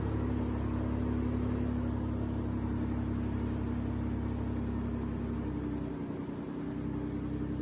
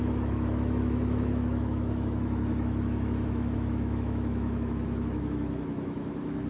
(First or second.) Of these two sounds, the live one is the first